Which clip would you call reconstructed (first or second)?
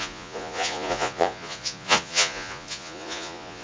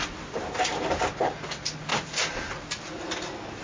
first